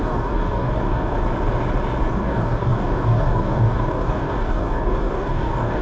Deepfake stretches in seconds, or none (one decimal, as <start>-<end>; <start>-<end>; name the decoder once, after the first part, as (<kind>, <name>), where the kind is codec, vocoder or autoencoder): 0.0-1.2 (codec, DAC); 2.1-5.8